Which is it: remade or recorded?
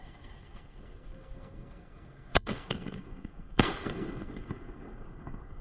remade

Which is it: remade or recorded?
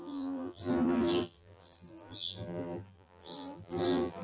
remade